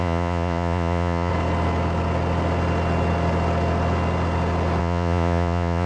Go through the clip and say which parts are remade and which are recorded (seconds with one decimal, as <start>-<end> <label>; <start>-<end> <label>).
0.0-1.3 remade; 1.3-4.8 recorded; 4.8-5.9 remade